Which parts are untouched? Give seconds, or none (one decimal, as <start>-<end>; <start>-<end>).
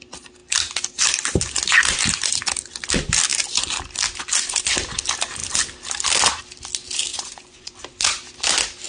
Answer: 0.0-7.1; 7.7-8.9